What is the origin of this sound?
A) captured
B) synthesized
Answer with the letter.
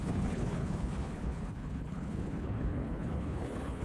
B